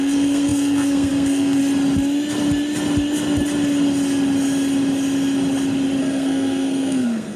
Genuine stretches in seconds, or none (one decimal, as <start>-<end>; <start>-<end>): 1.6-6.0

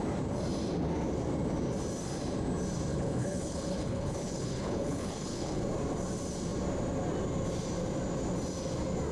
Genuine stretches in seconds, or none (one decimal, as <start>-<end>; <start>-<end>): 0.0-2.9; 5.6-9.1

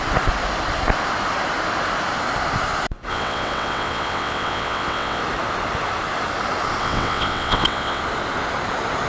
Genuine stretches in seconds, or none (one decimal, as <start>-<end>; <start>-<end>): 0.0-3.1; 5.2-6.8; 8.0-9.1

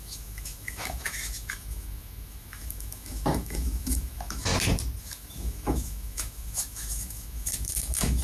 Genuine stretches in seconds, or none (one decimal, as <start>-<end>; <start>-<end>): 4.5-5.0

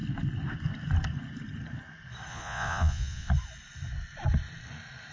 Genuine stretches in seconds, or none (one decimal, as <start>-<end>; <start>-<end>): 0.0-2.3; 3.3-5.1

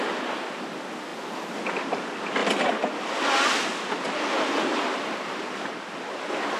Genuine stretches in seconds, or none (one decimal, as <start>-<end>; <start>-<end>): 0.0-6.6